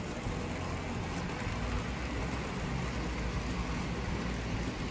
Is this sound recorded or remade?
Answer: recorded